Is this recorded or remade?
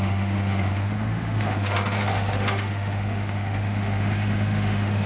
remade